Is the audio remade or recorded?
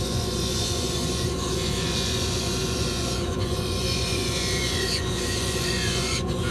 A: remade